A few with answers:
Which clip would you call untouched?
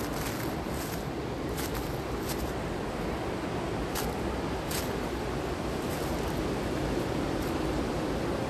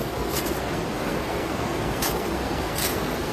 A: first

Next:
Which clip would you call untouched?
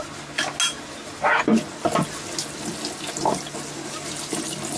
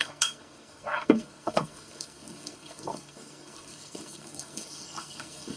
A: first